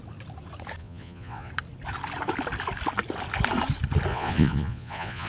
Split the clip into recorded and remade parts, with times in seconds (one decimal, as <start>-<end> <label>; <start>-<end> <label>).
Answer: 0.0-0.8 recorded; 0.8-1.5 remade; 1.5-4.1 recorded; 4.1-5.3 remade